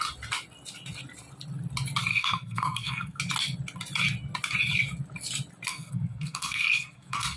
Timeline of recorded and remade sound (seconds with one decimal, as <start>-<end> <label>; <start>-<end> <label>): 0.0-2.1 recorded; 2.1-3.2 remade; 3.2-5.7 recorded; 5.7-7.4 remade

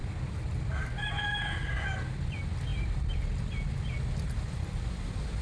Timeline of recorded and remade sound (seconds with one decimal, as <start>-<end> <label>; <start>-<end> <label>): 0.0-5.4 recorded

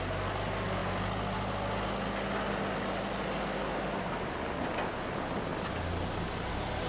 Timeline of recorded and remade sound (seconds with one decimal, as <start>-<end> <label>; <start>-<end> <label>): 0.0-6.9 recorded

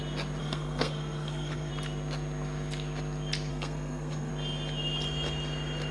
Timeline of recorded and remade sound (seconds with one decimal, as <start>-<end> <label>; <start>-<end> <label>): 0.0-0.4 recorded; 0.4-1.7 remade; 1.7-3.5 recorded; 3.5-4.3 remade; 4.3-5.9 recorded